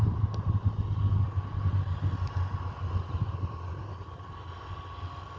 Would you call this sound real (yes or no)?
yes